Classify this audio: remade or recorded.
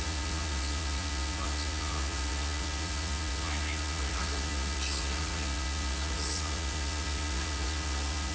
remade